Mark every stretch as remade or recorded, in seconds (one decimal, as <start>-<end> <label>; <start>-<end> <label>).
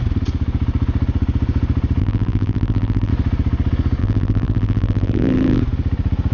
0.0-2.0 recorded; 2.0-3.1 remade; 3.1-4.0 recorded; 4.0-5.6 remade; 5.6-6.3 recorded